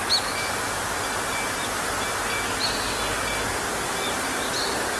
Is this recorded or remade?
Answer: recorded